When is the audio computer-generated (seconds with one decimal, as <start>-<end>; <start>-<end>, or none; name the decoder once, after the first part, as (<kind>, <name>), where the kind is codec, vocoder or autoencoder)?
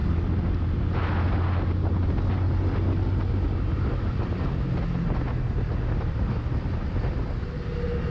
none